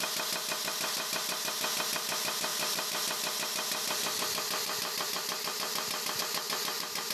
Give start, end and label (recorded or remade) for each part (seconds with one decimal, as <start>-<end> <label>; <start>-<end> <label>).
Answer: 0.0-2.5 recorded; 2.5-6.2 remade; 6.2-7.1 recorded